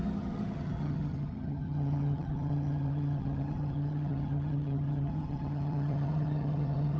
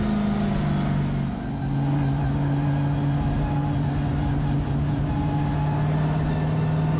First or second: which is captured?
second